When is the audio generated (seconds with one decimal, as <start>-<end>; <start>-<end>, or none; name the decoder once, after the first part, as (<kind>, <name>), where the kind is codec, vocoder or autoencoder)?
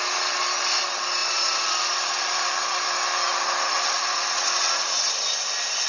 none